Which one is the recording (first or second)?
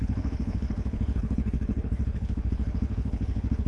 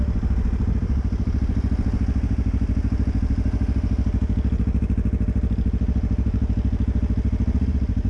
second